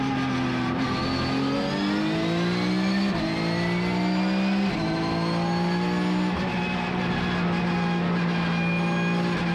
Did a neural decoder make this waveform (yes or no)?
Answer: no